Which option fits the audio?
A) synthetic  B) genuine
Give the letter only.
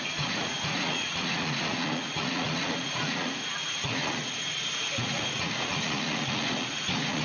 A